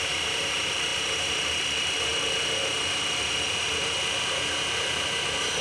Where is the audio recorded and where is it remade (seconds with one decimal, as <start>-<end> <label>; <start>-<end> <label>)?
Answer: 0.0-5.6 remade